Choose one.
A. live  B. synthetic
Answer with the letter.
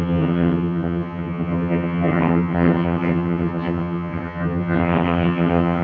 B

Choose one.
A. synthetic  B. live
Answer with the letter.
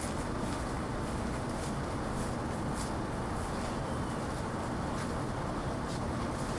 B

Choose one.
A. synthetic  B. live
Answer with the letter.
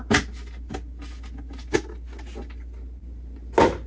B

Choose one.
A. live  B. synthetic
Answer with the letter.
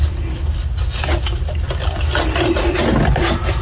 A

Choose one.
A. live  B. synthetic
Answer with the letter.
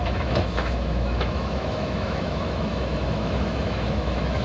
B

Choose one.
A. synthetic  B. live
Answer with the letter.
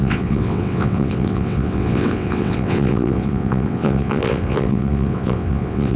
A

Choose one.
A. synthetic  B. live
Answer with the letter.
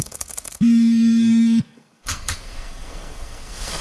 A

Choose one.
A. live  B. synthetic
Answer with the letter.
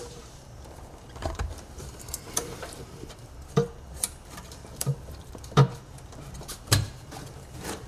B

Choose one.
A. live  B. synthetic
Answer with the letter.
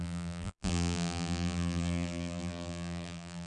B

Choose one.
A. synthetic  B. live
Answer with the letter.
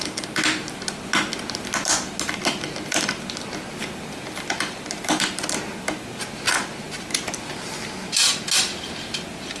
B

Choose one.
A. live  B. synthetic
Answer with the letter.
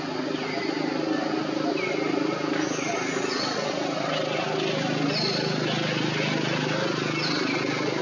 A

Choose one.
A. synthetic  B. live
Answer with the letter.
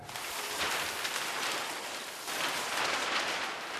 A